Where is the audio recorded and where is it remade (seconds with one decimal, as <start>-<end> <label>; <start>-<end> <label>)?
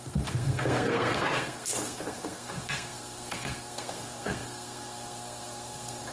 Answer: 0.0-6.1 remade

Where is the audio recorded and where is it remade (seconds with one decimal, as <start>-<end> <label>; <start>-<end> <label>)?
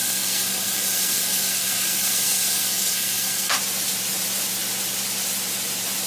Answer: 0.0-3.6 remade; 3.6-6.1 recorded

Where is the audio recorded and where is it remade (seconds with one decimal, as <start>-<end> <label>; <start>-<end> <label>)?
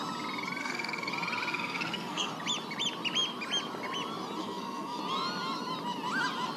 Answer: 0.0-0.6 recorded; 0.6-1.1 remade; 1.1-1.5 recorded; 1.5-2.3 remade; 2.3-4.4 recorded; 4.4-5.0 remade; 5.0-6.6 recorded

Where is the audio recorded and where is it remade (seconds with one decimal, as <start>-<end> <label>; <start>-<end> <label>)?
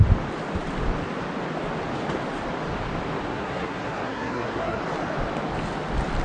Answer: 0.0-3.3 recorded; 3.3-4.8 remade; 4.8-6.2 recorded